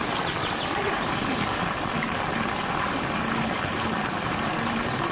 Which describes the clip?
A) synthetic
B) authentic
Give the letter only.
B